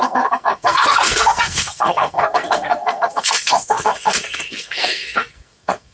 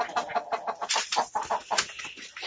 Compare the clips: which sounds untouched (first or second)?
second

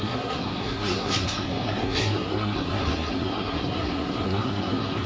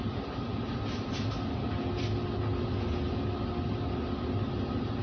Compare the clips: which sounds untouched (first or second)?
second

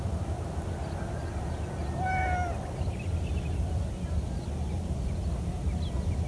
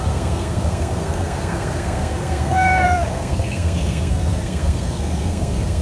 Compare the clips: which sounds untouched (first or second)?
first